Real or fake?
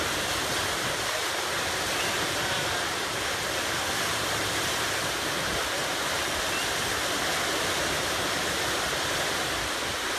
real